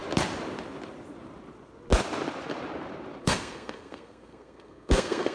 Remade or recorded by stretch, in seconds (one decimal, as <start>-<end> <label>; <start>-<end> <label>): 0.0-3.2 recorded; 3.2-5.3 remade